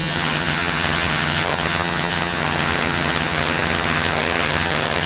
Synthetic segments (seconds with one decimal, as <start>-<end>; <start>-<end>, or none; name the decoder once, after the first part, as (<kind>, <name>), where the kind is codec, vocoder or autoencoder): 0.0-5.1 (vocoder, HiFi-GAN)